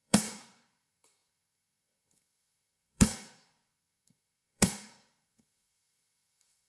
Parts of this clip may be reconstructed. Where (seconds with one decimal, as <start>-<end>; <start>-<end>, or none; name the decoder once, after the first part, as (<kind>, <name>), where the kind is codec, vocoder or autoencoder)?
0.0-6.7 (codec, SNAC)